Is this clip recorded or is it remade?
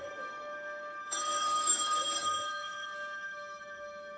remade